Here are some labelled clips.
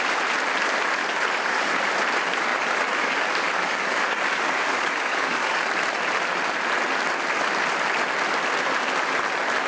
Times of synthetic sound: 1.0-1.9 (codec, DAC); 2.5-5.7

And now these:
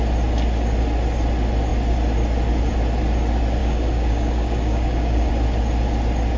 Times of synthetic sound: 3.6-5.3 (codec, DAC)

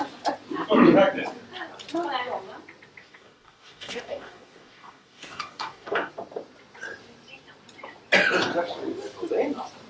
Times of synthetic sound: 3.0-6.1 (codec, DAC)

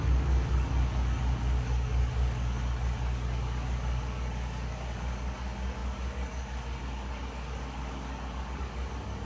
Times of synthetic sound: 0.0-9.3 (codec, DAC)